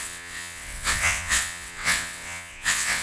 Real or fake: fake